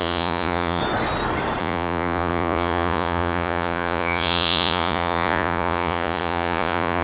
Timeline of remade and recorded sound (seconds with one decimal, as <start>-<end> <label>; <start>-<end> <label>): 0.0-0.8 remade; 0.8-1.6 recorded; 1.6-7.0 remade